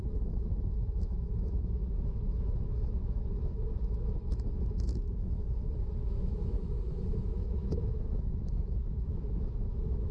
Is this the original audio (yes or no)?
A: no